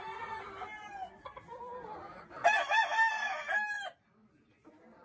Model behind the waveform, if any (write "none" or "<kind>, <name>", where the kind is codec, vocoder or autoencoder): none